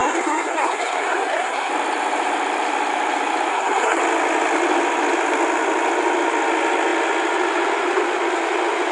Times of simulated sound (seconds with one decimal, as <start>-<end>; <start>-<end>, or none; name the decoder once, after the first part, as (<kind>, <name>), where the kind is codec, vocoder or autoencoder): 0.0-1.7 (codec, SNAC); 3.5-4.0